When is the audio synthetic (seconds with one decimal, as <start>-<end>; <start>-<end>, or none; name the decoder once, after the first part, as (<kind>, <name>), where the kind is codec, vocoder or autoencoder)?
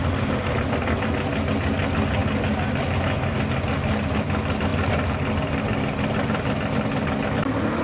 none